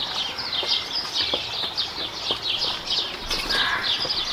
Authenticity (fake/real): real